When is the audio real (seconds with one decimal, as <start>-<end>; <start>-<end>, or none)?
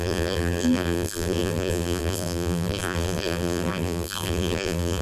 none